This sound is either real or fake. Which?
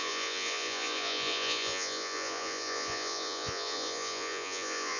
fake